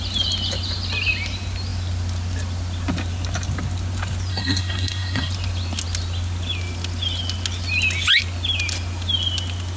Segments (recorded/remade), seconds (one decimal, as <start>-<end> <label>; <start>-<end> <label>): 0.0-4.3 recorded; 4.3-5.3 remade; 5.3-9.8 recorded